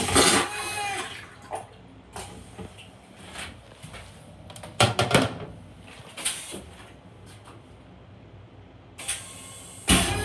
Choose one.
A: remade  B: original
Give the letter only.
B